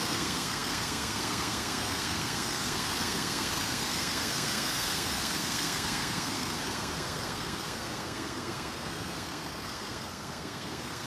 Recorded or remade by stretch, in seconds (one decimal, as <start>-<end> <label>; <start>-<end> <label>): 0.0-11.1 remade